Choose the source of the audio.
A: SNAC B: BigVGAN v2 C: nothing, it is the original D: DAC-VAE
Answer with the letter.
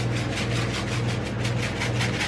C